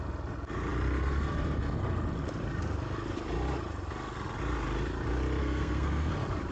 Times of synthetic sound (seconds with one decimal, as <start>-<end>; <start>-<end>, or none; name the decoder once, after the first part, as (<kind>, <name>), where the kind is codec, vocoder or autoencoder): 5.4-6.1 (codec, SNAC)